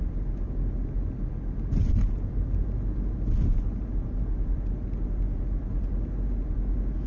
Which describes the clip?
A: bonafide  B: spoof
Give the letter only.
A